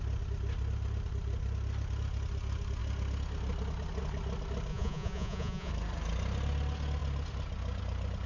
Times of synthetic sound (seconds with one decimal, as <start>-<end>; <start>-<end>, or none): 4.7-5.7